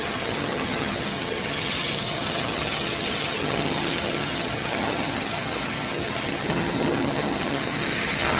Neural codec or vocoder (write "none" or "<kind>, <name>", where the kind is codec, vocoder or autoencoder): vocoder, HiFi-GAN